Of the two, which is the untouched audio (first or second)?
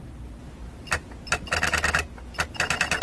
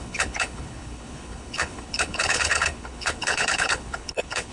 first